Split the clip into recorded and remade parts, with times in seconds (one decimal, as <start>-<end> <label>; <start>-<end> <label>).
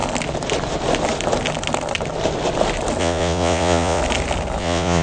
0.0-3.0 recorded; 3.0-4.0 remade; 4.0-4.6 recorded; 4.6-5.0 remade